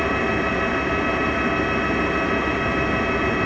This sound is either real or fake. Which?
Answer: real